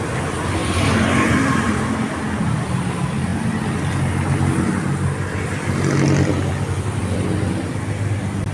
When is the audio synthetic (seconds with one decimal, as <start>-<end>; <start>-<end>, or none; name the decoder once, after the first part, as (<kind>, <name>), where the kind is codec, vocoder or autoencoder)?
0.6-1.8 (vocoder, BigVGAN v2)